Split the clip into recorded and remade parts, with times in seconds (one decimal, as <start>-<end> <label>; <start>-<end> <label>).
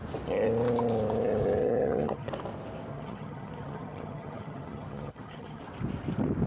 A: 0.0-1.6 recorded; 1.6-2.3 remade; 2.3-2.9 recorded; 2.9-5.6 remade; 5.6-6.5 recorded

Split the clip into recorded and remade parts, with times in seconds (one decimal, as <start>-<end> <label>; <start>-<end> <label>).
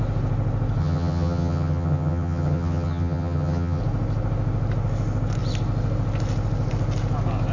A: 0.0-0.8 recorded; 0.8-3.8 remade; 3.8-7.5 recorded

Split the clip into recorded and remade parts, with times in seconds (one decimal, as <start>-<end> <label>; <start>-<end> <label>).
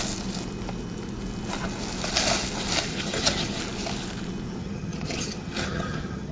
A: 0.0-2.9 recorded; 2.9-3.6 remade; 3.6-4.6 recorded; 4.6-6.3 remade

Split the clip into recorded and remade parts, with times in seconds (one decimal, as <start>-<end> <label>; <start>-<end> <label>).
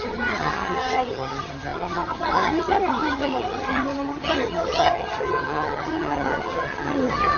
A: 0.0-7.4 remade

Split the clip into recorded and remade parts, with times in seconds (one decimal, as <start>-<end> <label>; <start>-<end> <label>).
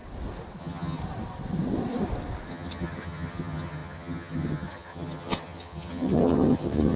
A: 0.0-0.6 recorded; 0.6-1.0 remade; 1.0-2.5 recorded; 2.5-7.0 remade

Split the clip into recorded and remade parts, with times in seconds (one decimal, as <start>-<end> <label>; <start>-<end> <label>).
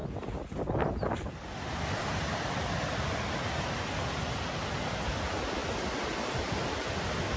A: 0.0-7.4 recorded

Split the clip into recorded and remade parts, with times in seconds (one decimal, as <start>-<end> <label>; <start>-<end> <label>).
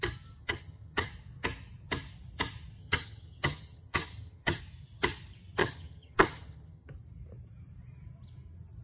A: 0.0-0.4 recorded; 0.4-1.1 remade; 1.1-2.8 recorded; 2.8-4.6 remade; 4.6-5.6 recorded; 5.6-6.9 remade; 6.9-8.8 recorded